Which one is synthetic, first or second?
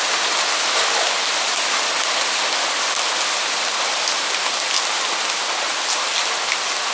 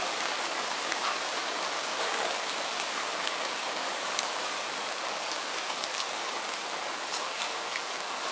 second